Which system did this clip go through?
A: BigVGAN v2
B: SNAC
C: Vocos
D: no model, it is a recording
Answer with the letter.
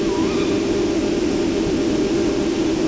D